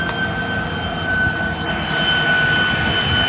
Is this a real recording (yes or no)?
yes